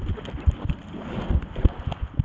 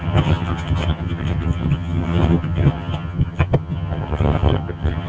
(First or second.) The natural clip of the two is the first